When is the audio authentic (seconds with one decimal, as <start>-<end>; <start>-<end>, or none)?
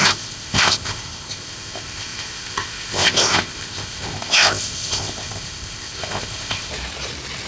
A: 6.7-7.5